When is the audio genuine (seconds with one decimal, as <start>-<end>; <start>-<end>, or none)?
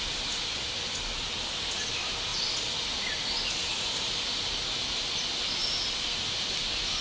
0.0-7.0